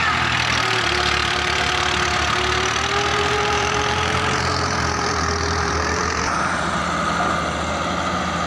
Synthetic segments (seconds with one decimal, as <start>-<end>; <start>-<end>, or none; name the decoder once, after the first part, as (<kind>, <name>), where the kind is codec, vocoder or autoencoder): 1.2-1.8 (vocoder, BigVGAN v2); 3.1-6.8